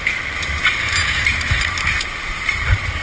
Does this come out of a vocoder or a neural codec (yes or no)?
no